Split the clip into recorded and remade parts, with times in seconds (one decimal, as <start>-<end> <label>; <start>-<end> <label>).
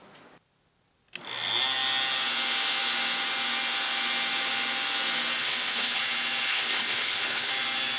0.0-5.4 recorded; 5.4-6.0 remade; 6.0-6.5 recorded; 6.5-7.5 remade; 7.5-8.0 recorded